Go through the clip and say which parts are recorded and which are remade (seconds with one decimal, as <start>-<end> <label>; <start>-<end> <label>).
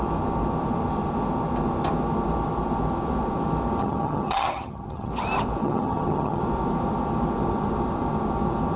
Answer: 0.0-3.8 recorded; 3.8-5.1 remade; 5.1-5.6 recorded; 5.6-6.4 remade; 6.4-8.8 recorded